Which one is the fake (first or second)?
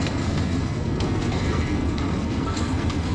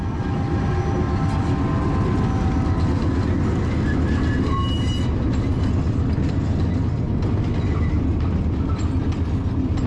first